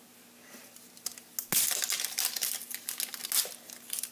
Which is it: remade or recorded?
recorded